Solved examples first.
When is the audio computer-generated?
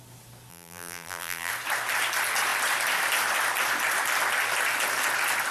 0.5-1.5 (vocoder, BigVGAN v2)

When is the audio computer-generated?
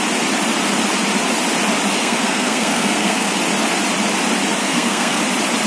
2.0-3.3 (codec, SNAC); 4.6-5.2